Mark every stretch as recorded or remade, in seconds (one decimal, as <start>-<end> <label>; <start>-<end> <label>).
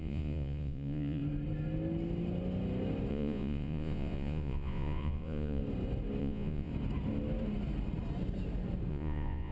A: 0.0-1.2 remade; 1.2-3.1 recorded; 3.1-5.6 remade; 5.6-6.2 recorded; 6.2-6.7 remade; 6.7-8.9 recorded; 8.9-9.5 remade